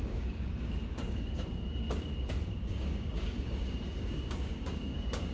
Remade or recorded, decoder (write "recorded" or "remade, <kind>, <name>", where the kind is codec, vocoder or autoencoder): remade, codec, DAC